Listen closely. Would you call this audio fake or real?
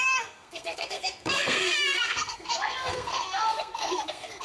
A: fake